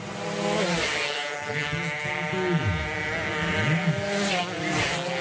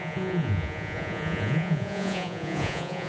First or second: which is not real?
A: second